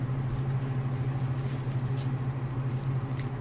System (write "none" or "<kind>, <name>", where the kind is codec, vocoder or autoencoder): none